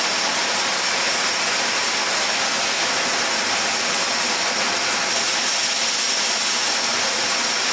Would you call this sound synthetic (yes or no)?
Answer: no